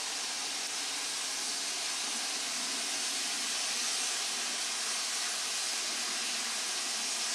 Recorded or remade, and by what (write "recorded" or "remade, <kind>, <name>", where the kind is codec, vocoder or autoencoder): recorded